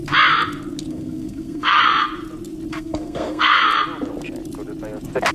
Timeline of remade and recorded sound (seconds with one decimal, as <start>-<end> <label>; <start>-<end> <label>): 0.0-0.9 recorded; 0.9-1.8 remade; 1.8-2.7 recorded; 2.7-3.6 remade; 3.6-5.3 recorded